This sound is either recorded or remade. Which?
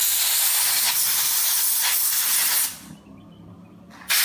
recorded